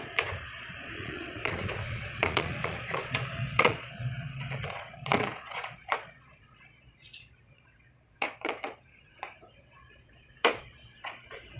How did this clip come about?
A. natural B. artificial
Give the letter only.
B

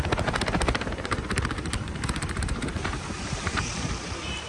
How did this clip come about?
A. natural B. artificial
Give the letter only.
B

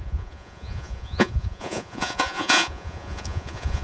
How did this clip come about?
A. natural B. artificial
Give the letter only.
B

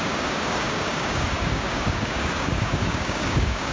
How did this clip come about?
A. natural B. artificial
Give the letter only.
B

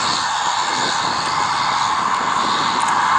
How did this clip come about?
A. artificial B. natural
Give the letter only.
B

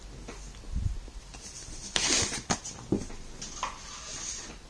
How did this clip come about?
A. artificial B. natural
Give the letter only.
B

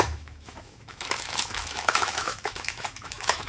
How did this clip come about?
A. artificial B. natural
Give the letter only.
A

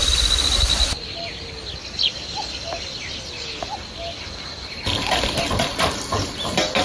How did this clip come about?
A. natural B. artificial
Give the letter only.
A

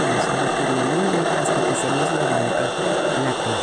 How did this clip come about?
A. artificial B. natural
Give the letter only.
B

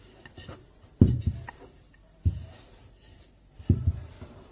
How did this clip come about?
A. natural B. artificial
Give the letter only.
A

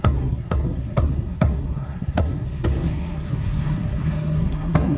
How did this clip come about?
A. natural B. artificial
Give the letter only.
B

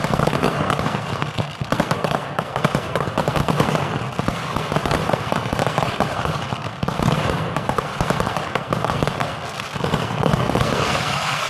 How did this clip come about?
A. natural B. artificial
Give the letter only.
B